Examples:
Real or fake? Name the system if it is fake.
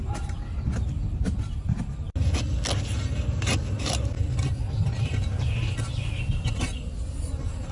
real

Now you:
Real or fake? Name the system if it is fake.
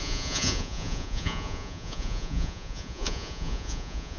fake, vocoder, Vocos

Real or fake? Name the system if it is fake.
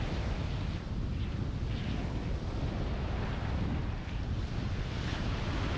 real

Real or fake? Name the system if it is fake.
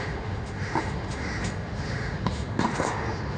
fake, autoencoder, DAC-VAE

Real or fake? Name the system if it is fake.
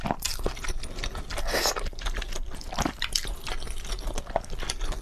real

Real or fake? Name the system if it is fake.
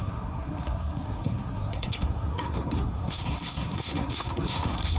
fake, codec, SNAC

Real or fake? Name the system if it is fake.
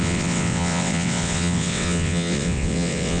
fake, vocoder, WaveNeXt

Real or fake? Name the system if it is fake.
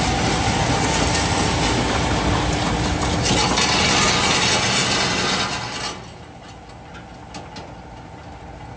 real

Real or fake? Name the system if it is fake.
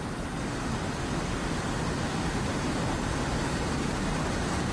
real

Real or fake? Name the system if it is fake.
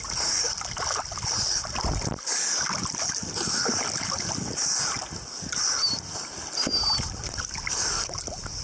real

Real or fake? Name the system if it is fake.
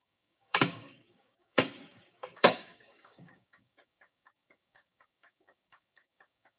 fake, codec, DAC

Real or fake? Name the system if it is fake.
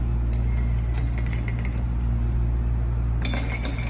real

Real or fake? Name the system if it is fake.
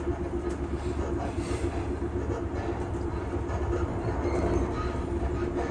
real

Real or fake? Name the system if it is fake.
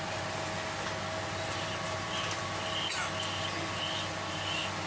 real